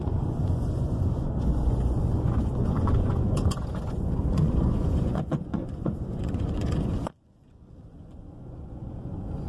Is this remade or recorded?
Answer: remade